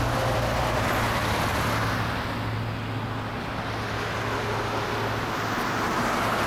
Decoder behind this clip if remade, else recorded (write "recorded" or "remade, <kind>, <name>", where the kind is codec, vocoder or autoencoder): recorded